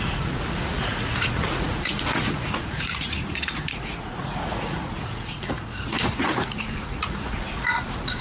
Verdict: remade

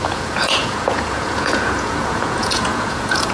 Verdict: remade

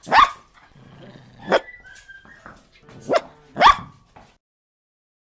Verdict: recorded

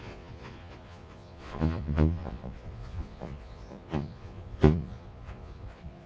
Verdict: remade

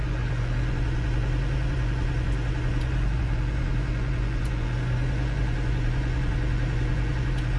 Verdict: remade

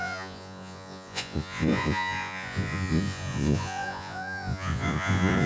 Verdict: remade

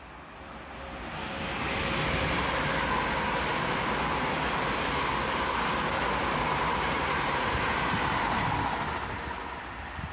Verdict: recorded